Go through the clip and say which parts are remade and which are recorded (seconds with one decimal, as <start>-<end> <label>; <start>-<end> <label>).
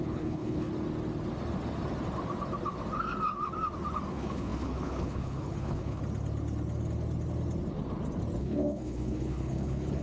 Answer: 0.0-0.7 remade; 0.7-4.1 recorded; 4.1-6.0 remade; 6.0-8.4 recorded; 8.4-10.0 remade